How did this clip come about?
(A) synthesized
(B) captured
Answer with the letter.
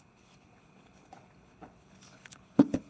A